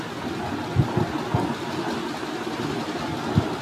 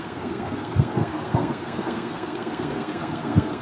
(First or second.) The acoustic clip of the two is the first